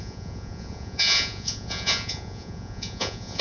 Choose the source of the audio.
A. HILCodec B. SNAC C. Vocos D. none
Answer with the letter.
C